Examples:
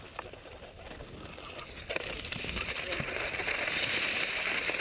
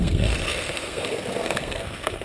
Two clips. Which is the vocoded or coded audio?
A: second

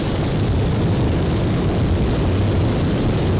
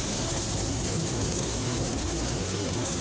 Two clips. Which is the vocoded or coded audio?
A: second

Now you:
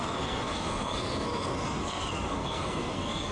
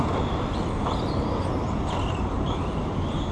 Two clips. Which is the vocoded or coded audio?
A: first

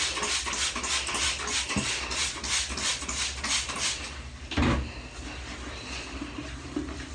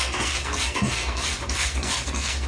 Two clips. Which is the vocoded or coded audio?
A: second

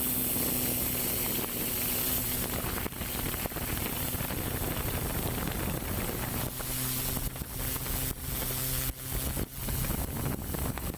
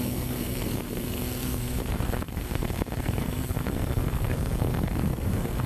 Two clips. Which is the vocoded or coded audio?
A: second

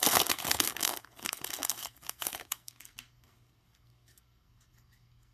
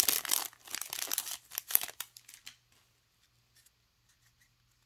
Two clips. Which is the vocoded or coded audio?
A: first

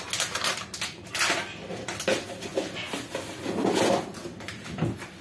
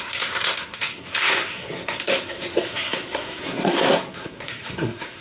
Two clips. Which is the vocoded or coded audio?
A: second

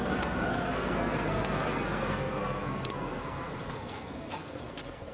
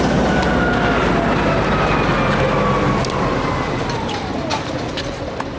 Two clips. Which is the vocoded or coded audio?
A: first